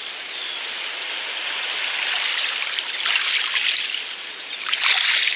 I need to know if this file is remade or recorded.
recorded